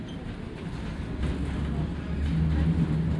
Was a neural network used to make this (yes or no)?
no